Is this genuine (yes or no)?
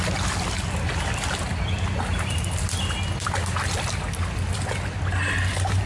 yes